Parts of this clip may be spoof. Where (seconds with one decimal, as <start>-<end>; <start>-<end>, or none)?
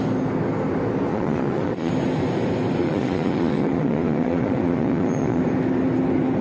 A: 1.1-1.9; 2.8-5.4